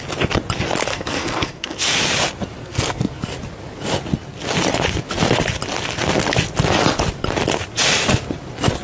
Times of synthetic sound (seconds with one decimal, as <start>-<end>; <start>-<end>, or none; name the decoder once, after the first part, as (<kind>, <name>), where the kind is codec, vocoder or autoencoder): 0.9-2.0 (codec, SNAC); 2.6-3.2